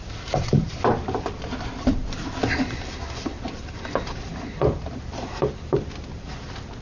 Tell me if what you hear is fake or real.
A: fake